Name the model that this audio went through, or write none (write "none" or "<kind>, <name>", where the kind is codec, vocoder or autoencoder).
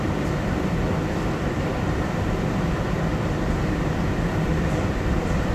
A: vocoder, BigVGAN v2